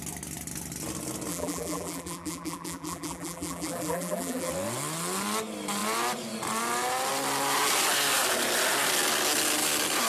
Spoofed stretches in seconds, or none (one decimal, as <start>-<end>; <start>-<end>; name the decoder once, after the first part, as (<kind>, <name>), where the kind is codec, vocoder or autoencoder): 1.3-4.5 (vocoder, BigVGAN v2)